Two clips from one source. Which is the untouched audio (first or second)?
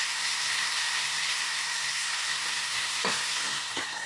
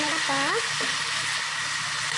second